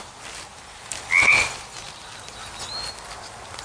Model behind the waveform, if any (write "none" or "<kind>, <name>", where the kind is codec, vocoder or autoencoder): none